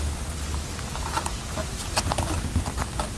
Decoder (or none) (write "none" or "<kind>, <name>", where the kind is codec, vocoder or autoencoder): none